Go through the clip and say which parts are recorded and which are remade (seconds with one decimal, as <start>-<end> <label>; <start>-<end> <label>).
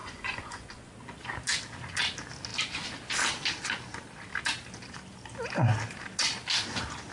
0.0-0.9 remade; 0.9-7.1 recorded